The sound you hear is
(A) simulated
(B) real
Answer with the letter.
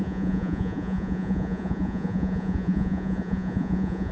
A